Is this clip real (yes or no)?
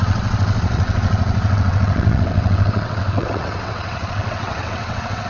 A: no